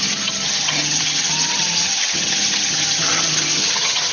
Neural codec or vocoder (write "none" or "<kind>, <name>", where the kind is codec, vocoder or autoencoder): vocoder, HiFi-GAN